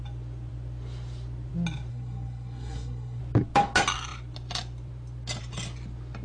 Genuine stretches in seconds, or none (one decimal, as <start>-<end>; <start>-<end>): 0.0-1.9; 3.2-6.2